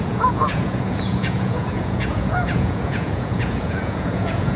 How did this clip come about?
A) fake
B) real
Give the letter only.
A